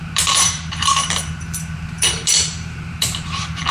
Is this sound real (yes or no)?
no